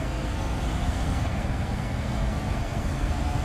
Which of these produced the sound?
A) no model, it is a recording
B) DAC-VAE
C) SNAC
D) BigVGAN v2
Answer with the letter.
C